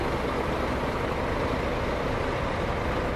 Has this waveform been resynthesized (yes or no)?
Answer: no